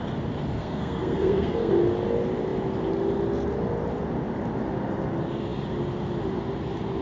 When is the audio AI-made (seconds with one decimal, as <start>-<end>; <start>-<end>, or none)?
0.6-1.7